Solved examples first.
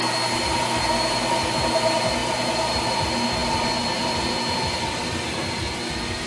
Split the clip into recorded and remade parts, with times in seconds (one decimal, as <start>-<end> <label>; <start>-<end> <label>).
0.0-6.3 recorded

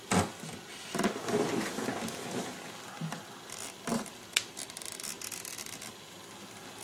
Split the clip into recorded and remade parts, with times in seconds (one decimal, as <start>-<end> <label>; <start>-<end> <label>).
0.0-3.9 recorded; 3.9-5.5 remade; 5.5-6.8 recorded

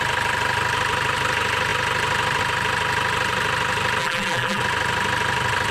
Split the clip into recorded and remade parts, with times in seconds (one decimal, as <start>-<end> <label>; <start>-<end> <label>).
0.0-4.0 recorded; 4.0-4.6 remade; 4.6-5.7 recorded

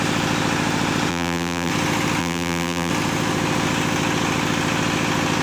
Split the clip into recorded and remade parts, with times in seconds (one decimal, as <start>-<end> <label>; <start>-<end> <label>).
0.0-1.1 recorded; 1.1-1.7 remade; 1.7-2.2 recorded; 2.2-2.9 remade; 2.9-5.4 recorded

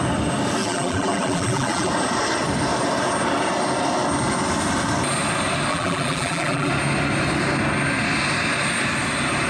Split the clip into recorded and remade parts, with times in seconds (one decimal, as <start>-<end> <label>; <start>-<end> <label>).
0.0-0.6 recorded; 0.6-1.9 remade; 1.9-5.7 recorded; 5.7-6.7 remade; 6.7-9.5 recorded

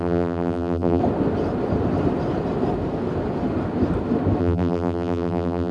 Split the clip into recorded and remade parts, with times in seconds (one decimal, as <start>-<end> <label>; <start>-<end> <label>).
0.0-1.0 remade; 1.0-4.4 recorded; 4.4-5.7 remade